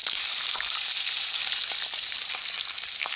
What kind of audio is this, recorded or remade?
recorded